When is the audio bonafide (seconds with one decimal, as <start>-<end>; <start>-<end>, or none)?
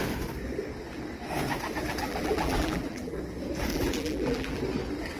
0.0-2.0; 3.2-3.7; 4.6-5.2